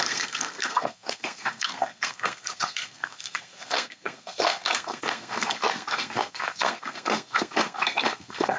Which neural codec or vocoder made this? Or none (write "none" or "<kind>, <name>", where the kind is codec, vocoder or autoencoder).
codec, SNAC